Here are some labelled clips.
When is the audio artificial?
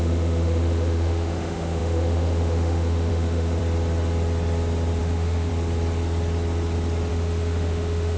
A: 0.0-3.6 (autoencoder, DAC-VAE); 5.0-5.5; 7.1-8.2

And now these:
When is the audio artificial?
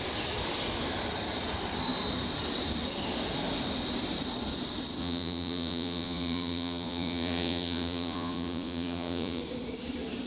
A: 5.0-9.4 (vocoder, Vocos)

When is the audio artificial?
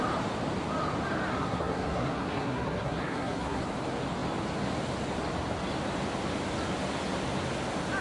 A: 1.3-3.6 (codec, SNAC)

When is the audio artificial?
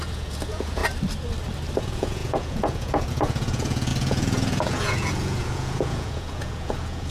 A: 0.0-0.8 (vocoder, Vocos); 1.8-7.1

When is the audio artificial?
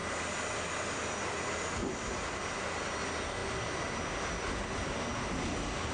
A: none